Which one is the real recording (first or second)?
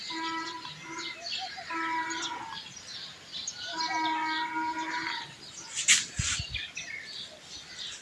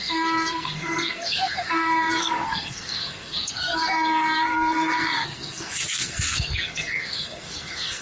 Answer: first